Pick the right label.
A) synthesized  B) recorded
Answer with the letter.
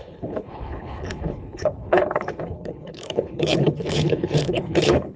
A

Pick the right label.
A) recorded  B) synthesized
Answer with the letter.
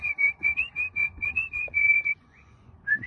B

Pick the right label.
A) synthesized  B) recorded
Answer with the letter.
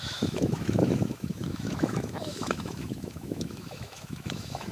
A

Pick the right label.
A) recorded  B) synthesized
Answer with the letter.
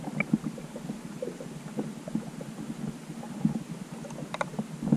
A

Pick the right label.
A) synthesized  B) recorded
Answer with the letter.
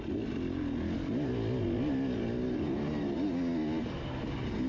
B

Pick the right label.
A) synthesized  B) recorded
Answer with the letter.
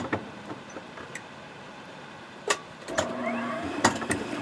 A